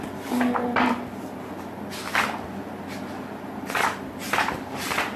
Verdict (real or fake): real